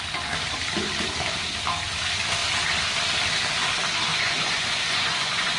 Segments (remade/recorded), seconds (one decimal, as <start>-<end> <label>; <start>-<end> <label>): 0.0-4.1 recorded; 4.1-5.6 remade